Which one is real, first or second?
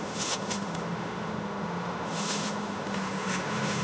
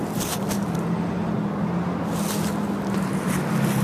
second